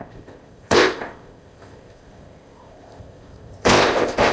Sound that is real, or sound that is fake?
fake